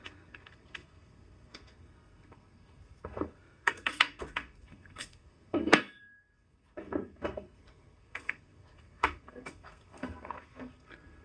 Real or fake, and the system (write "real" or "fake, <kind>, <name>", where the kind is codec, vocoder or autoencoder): fake, codec, SNAC